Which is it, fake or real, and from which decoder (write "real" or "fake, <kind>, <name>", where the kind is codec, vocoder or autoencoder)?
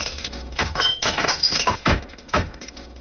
fake, autoencoder, DAC-VAE